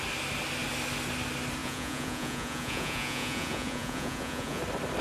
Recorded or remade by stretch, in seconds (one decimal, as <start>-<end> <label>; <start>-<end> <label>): 0.0-1.6 recorded; 1.6-4.6 remade; 4.6-5.0 recorded